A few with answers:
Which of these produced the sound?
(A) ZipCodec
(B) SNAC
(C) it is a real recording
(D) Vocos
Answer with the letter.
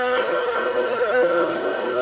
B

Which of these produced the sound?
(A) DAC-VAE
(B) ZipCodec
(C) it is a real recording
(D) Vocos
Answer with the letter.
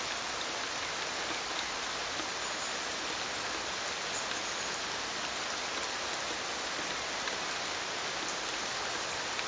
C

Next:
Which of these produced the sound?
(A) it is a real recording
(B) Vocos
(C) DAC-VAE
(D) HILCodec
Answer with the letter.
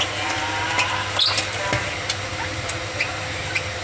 A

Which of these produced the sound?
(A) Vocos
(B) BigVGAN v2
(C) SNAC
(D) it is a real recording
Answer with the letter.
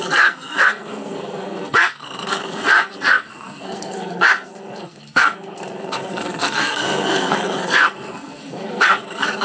C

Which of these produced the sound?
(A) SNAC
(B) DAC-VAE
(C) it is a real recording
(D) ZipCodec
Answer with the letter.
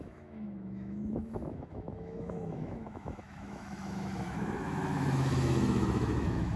B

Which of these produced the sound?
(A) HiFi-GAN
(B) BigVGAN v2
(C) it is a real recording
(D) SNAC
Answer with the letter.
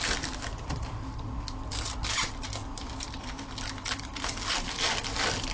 C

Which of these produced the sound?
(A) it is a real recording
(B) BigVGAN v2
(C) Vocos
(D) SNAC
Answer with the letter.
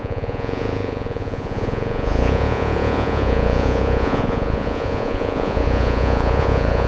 C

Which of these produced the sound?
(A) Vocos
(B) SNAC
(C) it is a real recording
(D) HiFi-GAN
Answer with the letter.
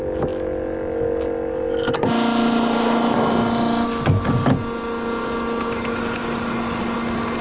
C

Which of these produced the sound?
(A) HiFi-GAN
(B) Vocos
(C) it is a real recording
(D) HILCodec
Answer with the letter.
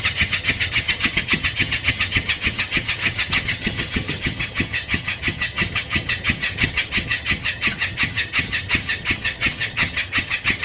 A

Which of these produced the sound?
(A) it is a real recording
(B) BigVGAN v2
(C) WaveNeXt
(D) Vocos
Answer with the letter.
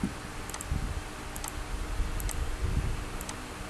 A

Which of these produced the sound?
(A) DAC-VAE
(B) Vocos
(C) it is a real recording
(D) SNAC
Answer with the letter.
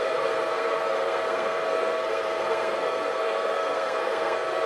D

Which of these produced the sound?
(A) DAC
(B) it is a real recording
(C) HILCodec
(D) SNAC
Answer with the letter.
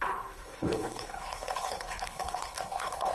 C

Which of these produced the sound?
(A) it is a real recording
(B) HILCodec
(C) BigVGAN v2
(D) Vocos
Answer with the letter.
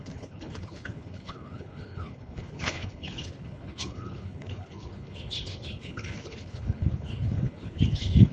B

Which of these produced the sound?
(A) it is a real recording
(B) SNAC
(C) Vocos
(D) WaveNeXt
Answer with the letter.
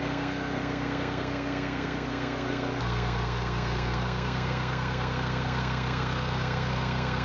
B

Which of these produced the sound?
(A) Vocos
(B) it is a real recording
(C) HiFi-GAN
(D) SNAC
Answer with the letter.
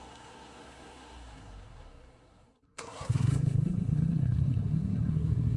D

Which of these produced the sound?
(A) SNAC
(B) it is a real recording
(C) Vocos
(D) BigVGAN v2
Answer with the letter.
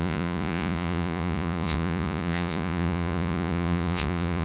C